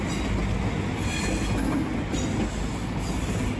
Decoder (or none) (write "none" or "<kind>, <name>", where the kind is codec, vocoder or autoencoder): none